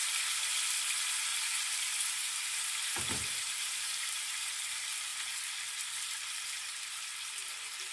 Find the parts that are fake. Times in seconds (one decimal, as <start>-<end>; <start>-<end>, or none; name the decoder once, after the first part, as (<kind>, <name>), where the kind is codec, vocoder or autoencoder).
1.3-4.5 (vocoder, BigVGAN v2)